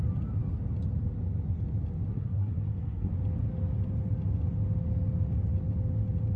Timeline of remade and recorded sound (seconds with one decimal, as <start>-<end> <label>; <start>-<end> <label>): 0.0-2.1 recorded; 2.1-3.1 remade; 3.1-6.4 recorded